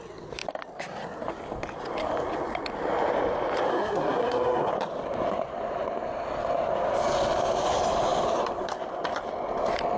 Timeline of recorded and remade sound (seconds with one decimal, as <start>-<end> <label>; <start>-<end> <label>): 0.0-3.7 recorded; 3.7-4.7 remade; 4.7-10.0 recorded